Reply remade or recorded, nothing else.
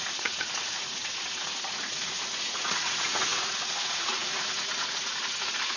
remade